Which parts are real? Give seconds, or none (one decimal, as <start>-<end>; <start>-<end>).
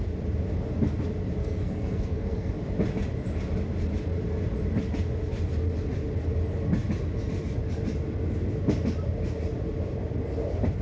0.0-1.4; 2.5-10.8